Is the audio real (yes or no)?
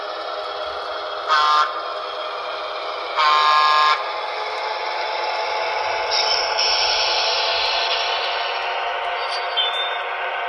yes